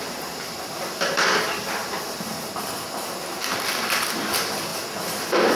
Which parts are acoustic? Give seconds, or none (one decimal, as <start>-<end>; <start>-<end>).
1.8-3.4; 4.7-5.6